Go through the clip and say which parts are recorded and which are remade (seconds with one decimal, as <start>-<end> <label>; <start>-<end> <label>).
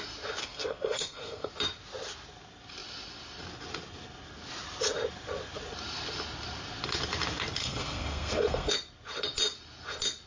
0.0-0.4 recorded; 0.4-1.5 remade; 1.5-7.6 recorded; 7.6-8.7 remade; 8.7-10.3 recorded